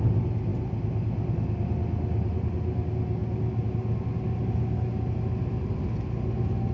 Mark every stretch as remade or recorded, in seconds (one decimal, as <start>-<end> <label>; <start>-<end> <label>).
0.0-6.7 recorded

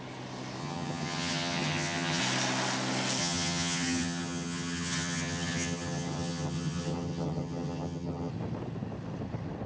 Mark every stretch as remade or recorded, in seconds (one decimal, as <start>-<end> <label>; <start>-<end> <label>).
0.0-0.6 recorded; 0.6-2.2 remade; 2.2-3.2 recorded; 3.2-8.3 remade; 8.3-9.7 recorded

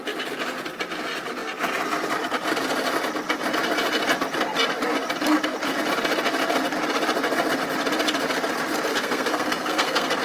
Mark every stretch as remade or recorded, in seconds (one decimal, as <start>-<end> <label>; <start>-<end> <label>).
0.0-8.9 recorded; 8.9-10.2 remade

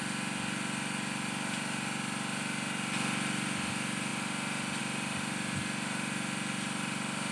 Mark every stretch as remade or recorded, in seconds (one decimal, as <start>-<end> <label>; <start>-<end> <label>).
0.0-7.3 recorded

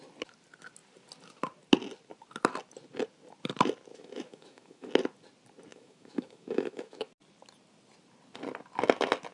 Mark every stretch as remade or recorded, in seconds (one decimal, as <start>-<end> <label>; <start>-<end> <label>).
0.0-3.9 recorded; 3.9-4.9 remade; 4.9-5.7 recorded; 5.7-7.1 remade; 7.1-9.3 recorded

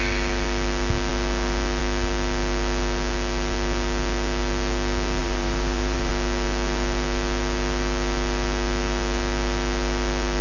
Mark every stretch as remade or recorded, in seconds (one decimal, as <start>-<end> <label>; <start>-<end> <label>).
0.0-5.2 recorded; 5.2-6.1 remade; 6.1-10.4 recorded

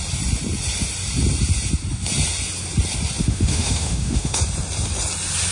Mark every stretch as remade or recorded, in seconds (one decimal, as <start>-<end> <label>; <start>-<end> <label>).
0.0-3.2 recorded; 3.2-4.4 remade; 4.4-5.5 recorded